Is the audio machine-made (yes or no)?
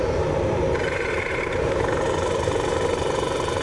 yes